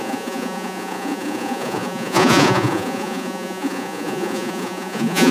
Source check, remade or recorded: remade